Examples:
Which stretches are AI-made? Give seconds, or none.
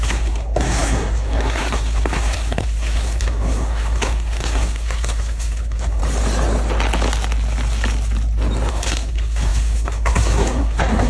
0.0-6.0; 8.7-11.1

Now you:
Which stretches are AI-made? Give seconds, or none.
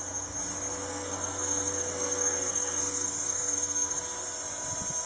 0.9-4.0